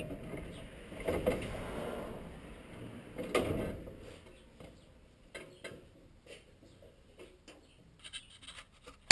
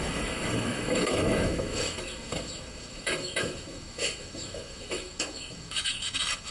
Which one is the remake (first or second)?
second